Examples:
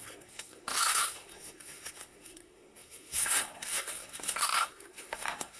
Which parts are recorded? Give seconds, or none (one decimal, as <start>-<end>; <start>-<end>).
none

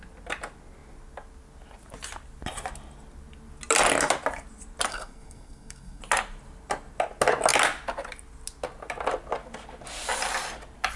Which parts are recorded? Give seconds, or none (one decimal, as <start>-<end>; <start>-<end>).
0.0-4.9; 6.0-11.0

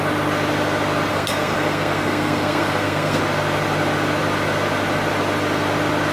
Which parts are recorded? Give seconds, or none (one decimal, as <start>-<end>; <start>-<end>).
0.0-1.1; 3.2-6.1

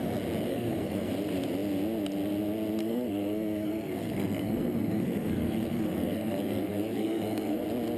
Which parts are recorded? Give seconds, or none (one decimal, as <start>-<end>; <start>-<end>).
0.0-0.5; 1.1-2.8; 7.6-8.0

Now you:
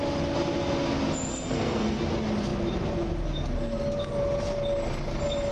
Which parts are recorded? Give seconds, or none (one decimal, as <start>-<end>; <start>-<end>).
0.0-1.3; 2.0-5.5

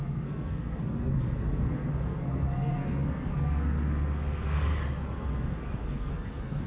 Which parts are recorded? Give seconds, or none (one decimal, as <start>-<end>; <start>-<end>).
4.7-5.2

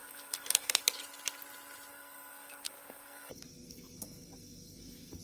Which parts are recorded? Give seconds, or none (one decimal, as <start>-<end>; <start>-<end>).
0.8-1.9